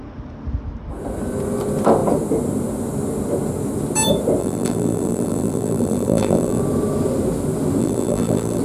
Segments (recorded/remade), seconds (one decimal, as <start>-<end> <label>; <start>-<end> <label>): 0.0-4.4 recorded; 4.4-6.6 remade; 6.6-7.8 recorded; 7.8-8.6 remade